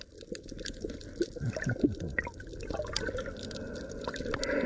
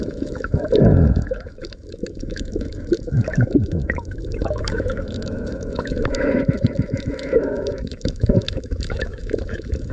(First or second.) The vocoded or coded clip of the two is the second